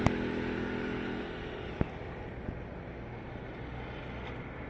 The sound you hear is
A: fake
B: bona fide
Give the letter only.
B